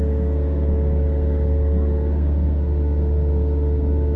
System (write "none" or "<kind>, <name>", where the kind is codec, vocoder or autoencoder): codec, SNAC